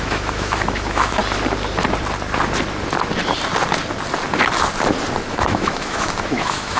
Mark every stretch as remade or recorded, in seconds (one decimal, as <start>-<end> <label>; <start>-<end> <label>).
0.0-1.2 remade; 1.2-5.3 recorded; 5.3-6.8 remade